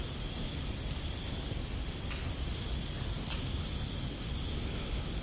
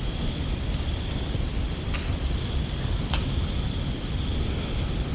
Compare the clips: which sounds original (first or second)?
first